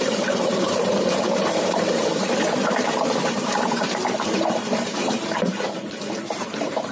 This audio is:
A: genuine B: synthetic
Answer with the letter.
B